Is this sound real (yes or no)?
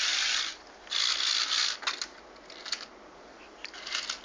yes